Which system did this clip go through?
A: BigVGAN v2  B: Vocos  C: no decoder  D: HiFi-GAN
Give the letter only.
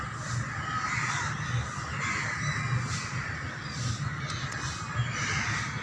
C